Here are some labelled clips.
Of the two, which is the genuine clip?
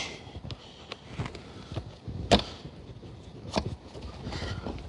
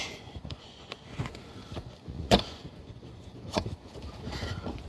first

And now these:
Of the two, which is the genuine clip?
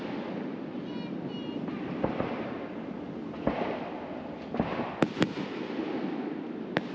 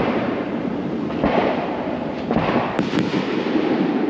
first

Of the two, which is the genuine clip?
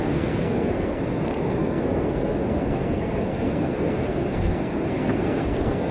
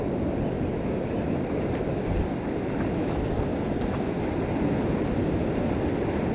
second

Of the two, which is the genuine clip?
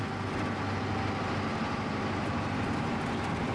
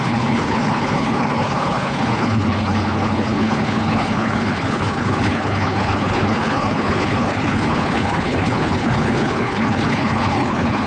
first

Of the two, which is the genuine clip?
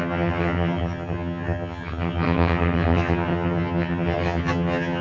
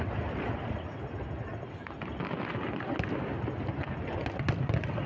second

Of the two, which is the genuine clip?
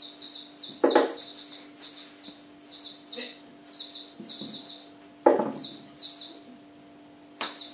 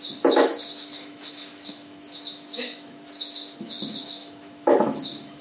first